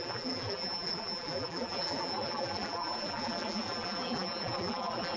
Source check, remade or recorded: remade